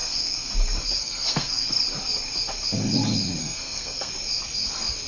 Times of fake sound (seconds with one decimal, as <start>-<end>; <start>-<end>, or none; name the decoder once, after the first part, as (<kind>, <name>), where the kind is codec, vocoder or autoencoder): 0.0-0.5 (codec, SNAC); 1.0-1.7; 3.4-4.1